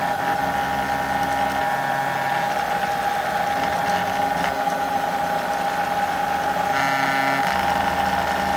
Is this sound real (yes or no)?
yes